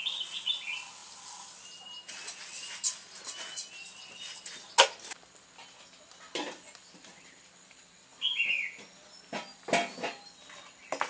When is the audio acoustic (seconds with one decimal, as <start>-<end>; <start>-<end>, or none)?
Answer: 0.0-11.1